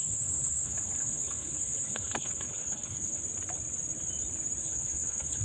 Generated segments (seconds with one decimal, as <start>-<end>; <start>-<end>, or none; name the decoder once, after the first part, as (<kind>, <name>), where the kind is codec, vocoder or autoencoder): 0.0-3.2 (codec, HILCodec); 4.6-5.4